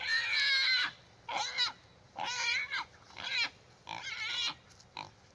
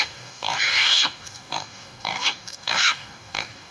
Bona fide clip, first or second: first